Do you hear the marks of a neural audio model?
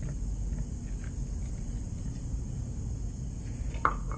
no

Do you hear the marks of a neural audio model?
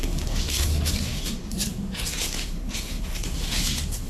yes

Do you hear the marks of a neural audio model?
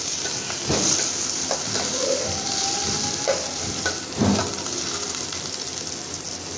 yes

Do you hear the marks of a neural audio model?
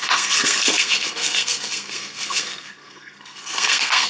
yes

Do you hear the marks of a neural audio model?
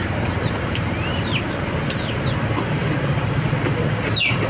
no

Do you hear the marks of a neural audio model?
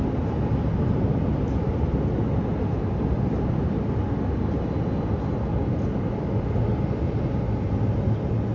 no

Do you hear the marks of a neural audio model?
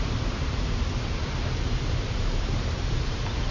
yes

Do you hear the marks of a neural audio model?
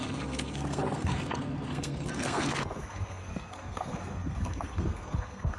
yes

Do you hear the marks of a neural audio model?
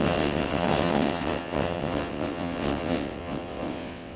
yes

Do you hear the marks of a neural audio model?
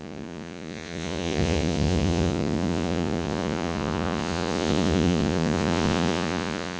yes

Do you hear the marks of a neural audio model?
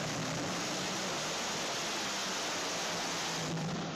no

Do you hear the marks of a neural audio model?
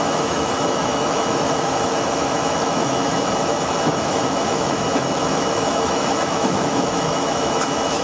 yes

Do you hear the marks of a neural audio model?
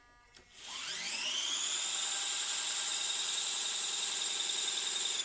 no